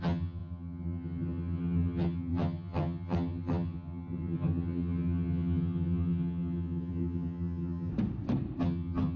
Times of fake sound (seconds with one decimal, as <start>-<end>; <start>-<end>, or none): 0.0-7.9; 8.6-9.2